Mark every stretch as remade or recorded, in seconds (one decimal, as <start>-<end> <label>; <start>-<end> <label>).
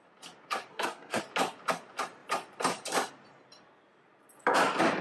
0.0-0.7 recorded; 0.7-1.2 remade; 1.2-5.0 recorded